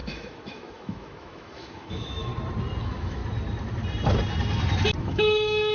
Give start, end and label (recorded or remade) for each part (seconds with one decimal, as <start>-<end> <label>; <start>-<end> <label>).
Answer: 0.0-2.3 remade; 2.3-2.8 recorded; 2.8-3.2 remade; 3.2-5.0 recorded; 5.0-5.7 remade